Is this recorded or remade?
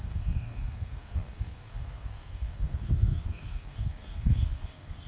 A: remade